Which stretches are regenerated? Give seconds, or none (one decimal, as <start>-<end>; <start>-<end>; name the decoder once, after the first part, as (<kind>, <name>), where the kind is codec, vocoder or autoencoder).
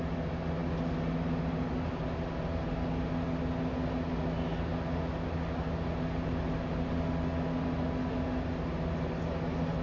none